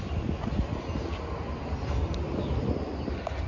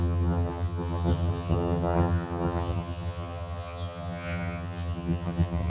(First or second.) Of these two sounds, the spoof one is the second